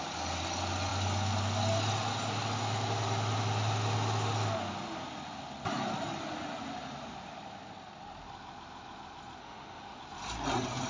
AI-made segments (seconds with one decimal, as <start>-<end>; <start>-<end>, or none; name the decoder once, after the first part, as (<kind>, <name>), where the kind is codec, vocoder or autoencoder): 9.4-10.0 (autoencoder, DAC-VAE)